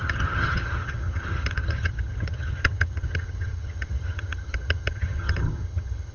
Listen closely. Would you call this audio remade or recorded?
remade